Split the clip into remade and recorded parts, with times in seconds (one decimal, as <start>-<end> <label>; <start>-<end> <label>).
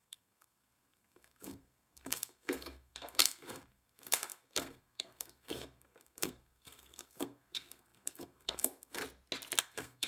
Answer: 0.0-9.0 remade; 9.0-9.6 recorded; 9.6-10.1 remade